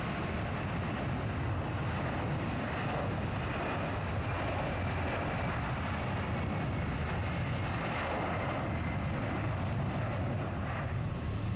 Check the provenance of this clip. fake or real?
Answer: real